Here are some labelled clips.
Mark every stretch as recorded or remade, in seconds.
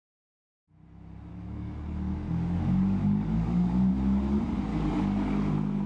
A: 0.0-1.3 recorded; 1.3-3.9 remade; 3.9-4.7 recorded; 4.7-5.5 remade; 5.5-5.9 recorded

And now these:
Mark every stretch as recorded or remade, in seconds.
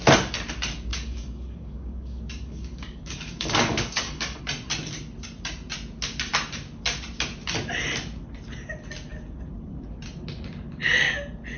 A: 0.0-0.9 recorded; 0.9-4.4 remade; 4.4-11.6 recorded